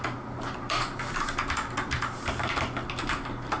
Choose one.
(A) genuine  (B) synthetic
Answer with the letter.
A